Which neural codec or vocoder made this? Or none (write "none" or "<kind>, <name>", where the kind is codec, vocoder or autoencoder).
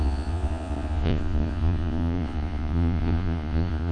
vocoder, Vocos